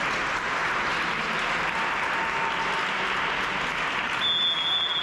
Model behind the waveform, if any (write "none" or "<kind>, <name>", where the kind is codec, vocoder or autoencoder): none